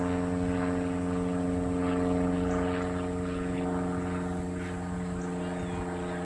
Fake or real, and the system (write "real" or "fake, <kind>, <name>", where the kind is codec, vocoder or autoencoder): real